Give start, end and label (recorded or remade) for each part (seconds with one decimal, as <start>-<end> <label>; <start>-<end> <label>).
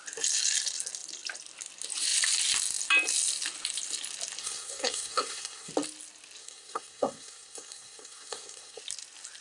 0.0-4.4 recorded; 4.4-5.7 remade; 5.7-6.4 recorded; 6.4-8.8 remade; 8.8-9.4 recorded